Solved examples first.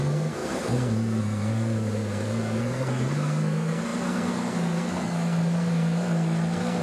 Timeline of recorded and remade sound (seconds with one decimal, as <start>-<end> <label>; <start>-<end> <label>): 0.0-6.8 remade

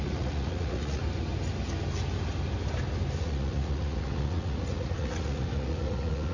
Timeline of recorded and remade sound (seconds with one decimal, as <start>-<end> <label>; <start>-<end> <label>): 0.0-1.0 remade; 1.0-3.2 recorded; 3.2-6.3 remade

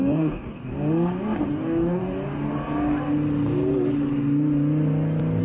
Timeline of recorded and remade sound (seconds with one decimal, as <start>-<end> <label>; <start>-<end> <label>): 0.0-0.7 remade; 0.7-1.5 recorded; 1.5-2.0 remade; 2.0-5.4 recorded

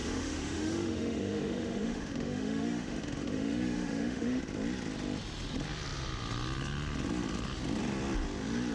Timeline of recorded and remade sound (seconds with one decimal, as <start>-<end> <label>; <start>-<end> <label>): 0.0-4.4 remade; 4.4-8.7 recorded

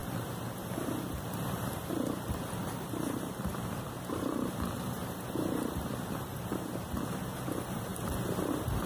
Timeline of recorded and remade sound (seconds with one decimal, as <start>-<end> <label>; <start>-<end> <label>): 0.0-1.0 recorded; 1.0-7.9 remade; 7.9-8.5 recorded; 8.5-8.9 remade

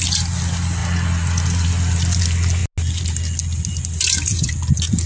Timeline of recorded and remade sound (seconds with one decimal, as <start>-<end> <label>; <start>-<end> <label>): 0.0-5.1 recorded

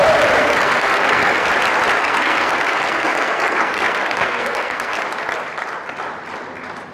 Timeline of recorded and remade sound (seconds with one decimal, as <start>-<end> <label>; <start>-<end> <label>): 0.0-0.4 recorded; 0.4-1.5 remade; 1.5-2.0 recorded; 2.0-5.0 remade; 5.0-6.9 recorded

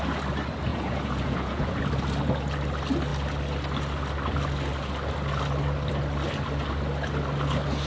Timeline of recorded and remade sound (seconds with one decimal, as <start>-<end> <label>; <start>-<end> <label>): 0.0-0.7 recorded; 0.7-1.8 remade; 1.8-7.9 recorded